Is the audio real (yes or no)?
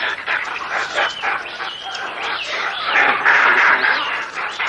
no